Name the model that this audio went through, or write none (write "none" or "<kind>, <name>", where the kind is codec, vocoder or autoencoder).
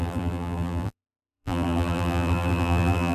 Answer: vocoder, BigVGAN v2